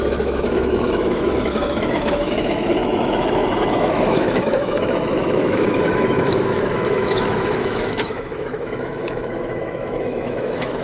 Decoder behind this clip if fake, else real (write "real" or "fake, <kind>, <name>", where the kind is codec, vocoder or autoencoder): fake, autoencoder, DAC-VAE